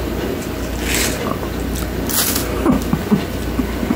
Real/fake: real